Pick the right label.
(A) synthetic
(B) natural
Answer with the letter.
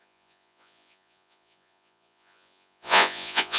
A